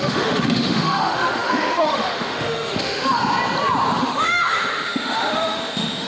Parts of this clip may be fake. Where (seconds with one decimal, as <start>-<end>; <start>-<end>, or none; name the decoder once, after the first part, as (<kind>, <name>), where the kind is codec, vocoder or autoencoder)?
0.0-3.2 (autoencoder, DAC-VAE); 4.0-6.1